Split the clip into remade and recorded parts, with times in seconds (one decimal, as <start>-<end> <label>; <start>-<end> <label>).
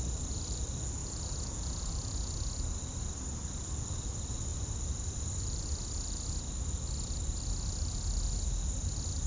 0.0-1.0 recorded; 1.0-2.3 remade; 2.3-9.3 recorded